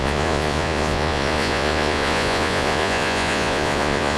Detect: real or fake fake